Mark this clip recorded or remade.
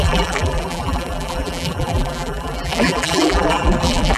remade